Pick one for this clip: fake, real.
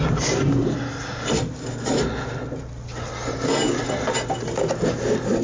real